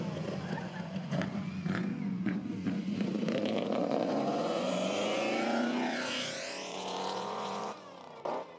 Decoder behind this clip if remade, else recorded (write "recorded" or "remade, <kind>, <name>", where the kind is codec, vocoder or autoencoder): remade, vocoder, Vocos